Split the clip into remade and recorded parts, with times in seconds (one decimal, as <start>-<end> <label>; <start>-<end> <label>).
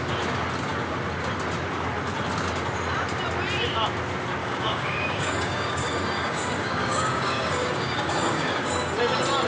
0.0-4.4 recorded; 4.4-9.0 remade; 9.0-9.5 recorded